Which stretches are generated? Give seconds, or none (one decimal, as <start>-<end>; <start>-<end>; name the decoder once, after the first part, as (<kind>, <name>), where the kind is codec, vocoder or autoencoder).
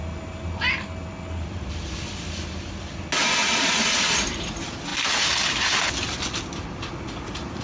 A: 3.4-4.0 (vocoder, Vocos)